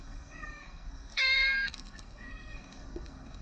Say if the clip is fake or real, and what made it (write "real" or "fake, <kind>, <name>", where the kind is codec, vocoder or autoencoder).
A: fake, codec, SNAC